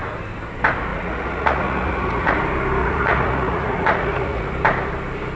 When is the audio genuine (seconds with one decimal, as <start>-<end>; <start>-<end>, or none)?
0.0-0.9; 2.4-2.8; 4.5-5.4